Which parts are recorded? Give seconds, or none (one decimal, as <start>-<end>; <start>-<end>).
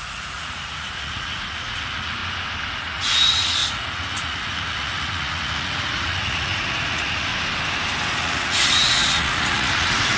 2.2-2.7; 7.3-8.2